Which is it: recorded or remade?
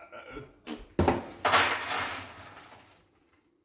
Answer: recorded